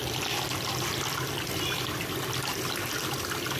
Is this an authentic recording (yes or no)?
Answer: yes